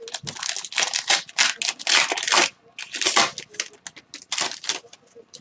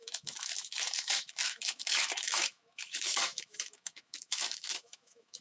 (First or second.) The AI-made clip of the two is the second